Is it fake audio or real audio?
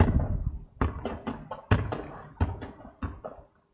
real